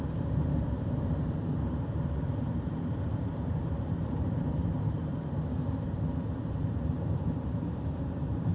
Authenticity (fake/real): fake